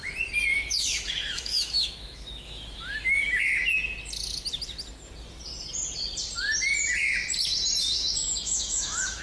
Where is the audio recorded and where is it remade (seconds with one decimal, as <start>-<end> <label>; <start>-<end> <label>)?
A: 0.0-0.5 recorded; 0.5-3.4 remade; 3.4-7.8 recorded; 7.8-9.2 remade